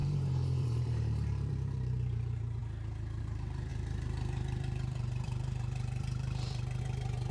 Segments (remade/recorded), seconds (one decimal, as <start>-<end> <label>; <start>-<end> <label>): 0.0-2.6 remade; 2.6-3.2 recorded; 3.2-7.3 remade